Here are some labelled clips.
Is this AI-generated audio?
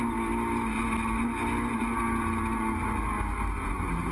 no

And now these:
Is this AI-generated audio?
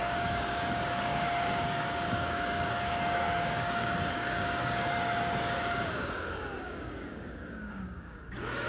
yes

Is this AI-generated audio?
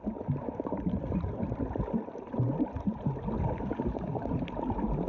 no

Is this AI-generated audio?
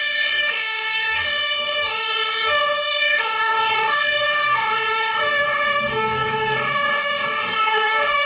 yes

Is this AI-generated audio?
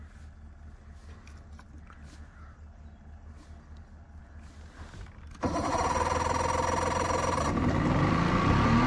no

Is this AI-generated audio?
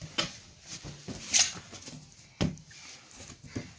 no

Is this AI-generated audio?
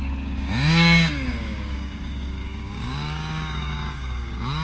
yes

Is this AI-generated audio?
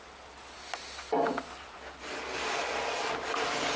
no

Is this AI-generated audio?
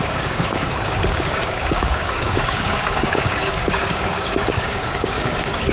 yes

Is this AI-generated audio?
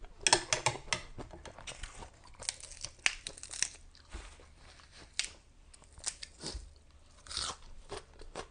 no